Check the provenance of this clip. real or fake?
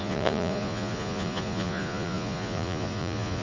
fake